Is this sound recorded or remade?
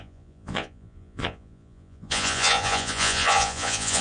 remade